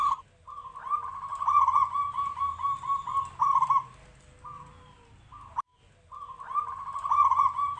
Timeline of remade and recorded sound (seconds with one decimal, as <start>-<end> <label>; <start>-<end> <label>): 0.0-7.8 recorded